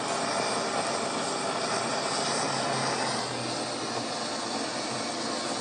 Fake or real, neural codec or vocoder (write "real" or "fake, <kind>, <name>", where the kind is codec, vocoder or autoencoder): real